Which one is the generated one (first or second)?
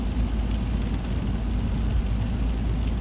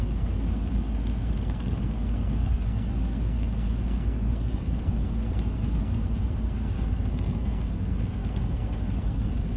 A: second